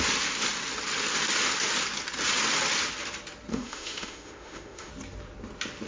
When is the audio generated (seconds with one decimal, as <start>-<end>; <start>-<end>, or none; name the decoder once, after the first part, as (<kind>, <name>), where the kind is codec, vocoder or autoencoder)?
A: 3.5-4.9 (autoencoder, DAC-VAE)